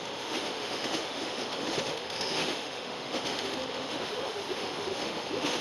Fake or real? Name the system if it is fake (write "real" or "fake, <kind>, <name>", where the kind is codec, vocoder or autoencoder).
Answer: fake, autoencoder, DAC-VAE